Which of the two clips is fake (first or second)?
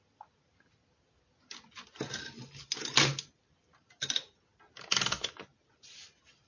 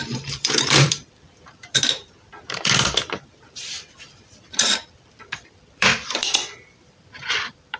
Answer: second